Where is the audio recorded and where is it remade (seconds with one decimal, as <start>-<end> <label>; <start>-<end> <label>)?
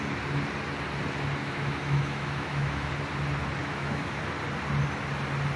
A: 0.0-1.4 recorded; 1.4-2.9 remade; 2.9-3.6 recorded; 3.6-4.2 remade; 4.2-5.6 recorded